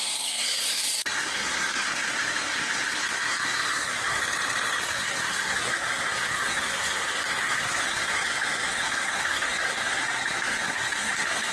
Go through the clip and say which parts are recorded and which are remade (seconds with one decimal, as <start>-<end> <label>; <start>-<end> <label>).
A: 0.0-4.2 remade; 4.2-4.8 recorded; 4.8-11.5 remade